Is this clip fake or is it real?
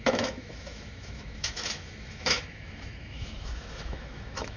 fake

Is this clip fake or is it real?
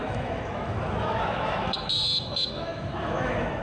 fake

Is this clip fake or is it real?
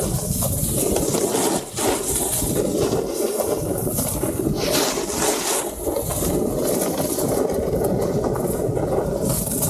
real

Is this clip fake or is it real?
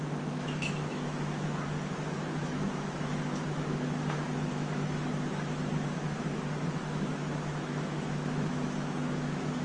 fake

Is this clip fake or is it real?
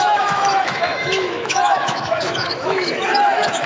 fake